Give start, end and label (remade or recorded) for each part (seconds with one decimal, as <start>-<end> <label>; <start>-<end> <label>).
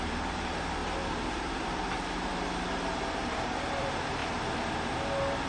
0.0-0.8 remade; 0.8-1.3 recorded; 1.3-2.3 remade; 2.3-3.2 recorded; 3.2-4.2 remade; 4.2-5.5 recorded